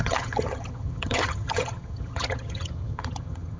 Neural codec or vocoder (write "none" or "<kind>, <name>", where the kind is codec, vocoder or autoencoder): vocoder, HiFi-GAN